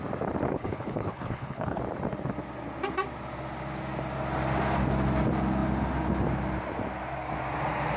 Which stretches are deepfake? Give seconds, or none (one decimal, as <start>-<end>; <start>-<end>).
0.5-1.8